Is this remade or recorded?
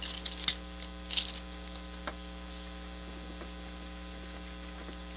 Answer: recorded